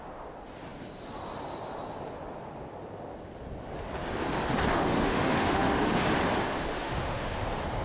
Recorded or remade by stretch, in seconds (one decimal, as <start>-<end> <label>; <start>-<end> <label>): 0.0-4.9 recorded; 4.9-6.0 remade; 6.0-6.7 recorded; 6.7-7.3 remade; 7.3-7.8 recorded